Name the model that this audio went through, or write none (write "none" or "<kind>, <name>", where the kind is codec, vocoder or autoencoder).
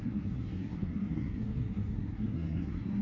codec, SNAC